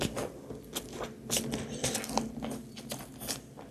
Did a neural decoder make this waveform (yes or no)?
no